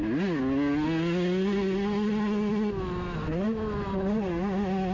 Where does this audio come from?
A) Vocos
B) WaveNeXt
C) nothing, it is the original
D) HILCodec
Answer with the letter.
C